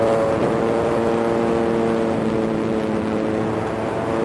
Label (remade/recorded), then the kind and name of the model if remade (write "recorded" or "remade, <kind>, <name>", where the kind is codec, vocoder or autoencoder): recorded